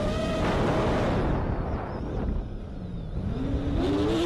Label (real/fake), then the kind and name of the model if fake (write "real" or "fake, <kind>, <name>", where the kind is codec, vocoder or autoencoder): real